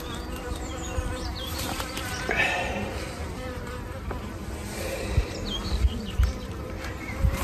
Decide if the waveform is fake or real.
fake